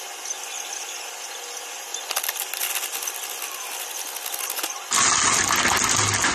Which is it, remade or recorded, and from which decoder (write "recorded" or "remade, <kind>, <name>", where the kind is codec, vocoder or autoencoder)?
recorded